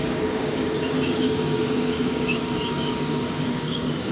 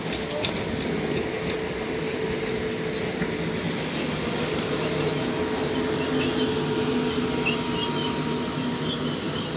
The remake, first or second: first